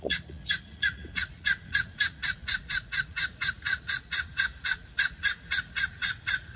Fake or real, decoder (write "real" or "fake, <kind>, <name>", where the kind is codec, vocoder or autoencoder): fake, vocoder, Vocos